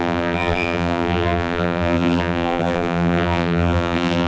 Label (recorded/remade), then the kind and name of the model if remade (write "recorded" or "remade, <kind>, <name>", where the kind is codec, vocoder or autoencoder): remade, vocoder, BigVGAN v2